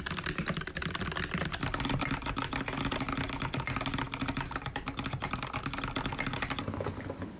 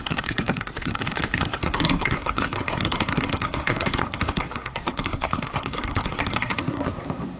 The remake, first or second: second